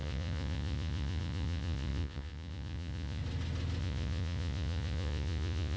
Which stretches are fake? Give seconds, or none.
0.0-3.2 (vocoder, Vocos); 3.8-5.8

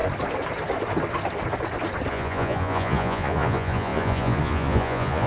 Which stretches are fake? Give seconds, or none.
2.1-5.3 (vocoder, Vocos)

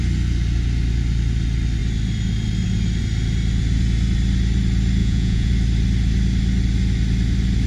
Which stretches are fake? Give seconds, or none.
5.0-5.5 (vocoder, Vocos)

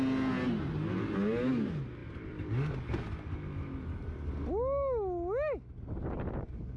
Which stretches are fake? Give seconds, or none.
none

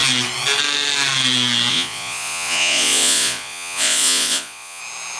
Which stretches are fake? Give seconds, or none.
1.7-4.8 (vocoder, Vocos)